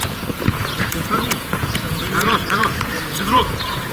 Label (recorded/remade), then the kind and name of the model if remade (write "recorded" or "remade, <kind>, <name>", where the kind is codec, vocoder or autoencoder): remade, vocoder, Vocos